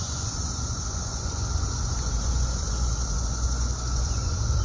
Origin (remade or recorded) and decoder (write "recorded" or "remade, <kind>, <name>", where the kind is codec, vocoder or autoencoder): remade, vocoder, Vocos